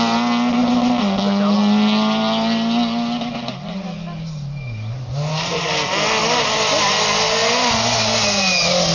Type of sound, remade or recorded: recorded